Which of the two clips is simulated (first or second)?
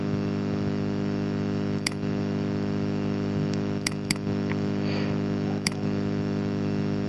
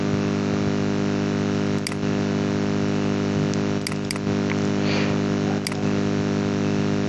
first